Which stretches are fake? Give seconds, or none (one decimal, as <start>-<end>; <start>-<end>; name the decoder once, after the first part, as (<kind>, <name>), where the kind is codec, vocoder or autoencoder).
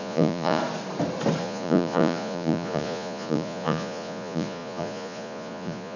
0.0-0.6 (vocoder, Vocos); 1.4-6.0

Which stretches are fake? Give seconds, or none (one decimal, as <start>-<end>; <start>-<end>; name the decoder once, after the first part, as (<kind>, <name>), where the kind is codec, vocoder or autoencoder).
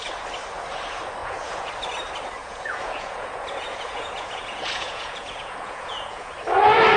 1.2-1.7 (vocoder, Vocos); 2.4-6.3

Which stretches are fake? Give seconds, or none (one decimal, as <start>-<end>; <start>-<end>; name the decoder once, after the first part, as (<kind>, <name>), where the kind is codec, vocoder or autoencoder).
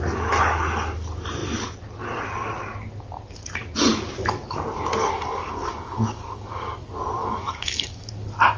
5.0-6.7 (codec, DAC); 7.2-8.1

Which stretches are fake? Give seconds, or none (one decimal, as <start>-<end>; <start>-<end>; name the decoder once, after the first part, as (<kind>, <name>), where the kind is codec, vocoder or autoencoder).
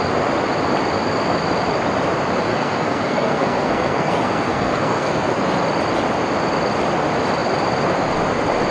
2.5-5.4 (codec, SNAC)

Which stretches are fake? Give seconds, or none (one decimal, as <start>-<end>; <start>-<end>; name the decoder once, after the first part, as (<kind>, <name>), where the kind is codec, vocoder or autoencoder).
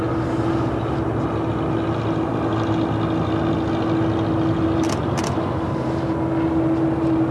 none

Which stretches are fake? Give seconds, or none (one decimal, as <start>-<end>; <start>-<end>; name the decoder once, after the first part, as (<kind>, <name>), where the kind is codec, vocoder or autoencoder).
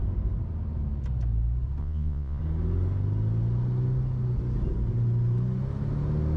1.8-2.4 (vocoder, Vocos)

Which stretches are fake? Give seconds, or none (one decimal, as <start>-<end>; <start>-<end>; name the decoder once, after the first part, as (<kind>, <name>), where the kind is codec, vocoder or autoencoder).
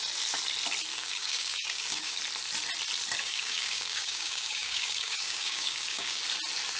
0.9-2.2 (codec, DAC); 3.2-6.2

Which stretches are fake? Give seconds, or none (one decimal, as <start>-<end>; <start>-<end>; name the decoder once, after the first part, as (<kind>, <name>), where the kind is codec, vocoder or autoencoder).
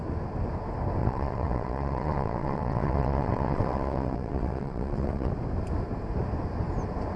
1.0-5.3 (vocoder, WaveNeXt)